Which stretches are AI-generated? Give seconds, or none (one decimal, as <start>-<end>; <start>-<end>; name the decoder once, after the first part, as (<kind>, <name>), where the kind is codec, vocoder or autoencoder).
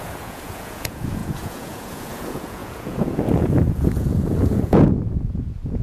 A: 0.0-5.8 (vocoder, Vocos)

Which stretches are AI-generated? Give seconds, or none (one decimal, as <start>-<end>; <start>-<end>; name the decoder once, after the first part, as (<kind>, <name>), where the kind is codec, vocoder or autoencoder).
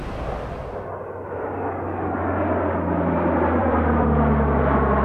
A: 3.6-4.6 (vocoder, BigVGAN v2)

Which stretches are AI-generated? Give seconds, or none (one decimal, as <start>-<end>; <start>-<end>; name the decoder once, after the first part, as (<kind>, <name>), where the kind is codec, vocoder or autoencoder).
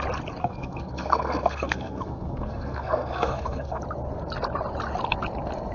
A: 0.4-3.8 (codec, SNAC)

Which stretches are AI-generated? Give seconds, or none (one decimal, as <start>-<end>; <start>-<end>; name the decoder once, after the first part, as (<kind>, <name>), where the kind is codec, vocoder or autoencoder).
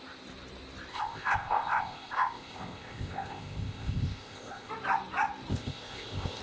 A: 0.9-4.7 (codec, ZipCodec); 5.5-6.4